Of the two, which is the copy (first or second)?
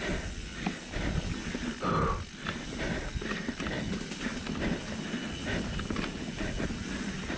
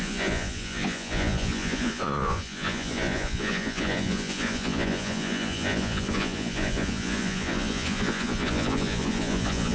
second